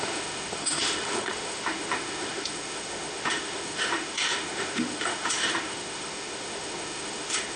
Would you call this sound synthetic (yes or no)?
yes